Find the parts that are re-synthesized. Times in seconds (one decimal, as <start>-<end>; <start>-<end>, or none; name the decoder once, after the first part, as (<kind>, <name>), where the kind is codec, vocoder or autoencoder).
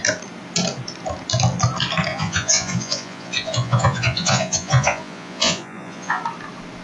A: 2.1-6.2 (vocoder, Vocos)